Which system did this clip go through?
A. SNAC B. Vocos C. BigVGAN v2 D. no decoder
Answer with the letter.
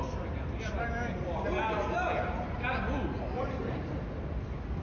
D